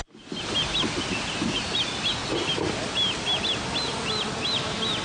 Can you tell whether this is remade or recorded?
recorded